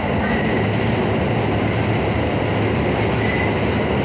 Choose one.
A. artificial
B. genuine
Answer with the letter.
B